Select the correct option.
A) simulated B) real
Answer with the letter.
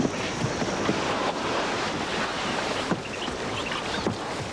B